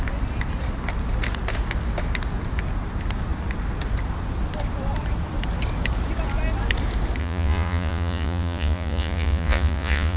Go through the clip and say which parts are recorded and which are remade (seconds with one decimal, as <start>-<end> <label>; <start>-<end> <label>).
0.0-7.2 recorded; 7.2-10.2 remade